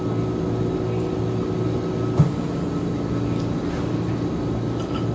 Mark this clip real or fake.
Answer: real